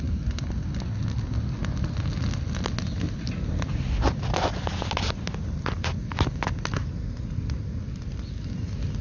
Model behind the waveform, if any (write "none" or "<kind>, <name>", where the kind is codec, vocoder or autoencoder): none